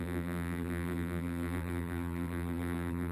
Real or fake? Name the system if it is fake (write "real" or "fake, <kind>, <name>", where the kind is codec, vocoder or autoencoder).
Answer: fake, vocoder, BigVGAN v2